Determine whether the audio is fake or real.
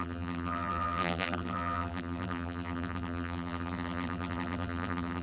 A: fake